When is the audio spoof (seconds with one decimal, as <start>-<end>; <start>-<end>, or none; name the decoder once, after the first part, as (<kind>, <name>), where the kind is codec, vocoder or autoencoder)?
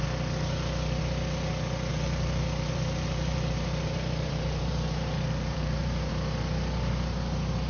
1.9-6.1 (vocoder, BigVGAN v2)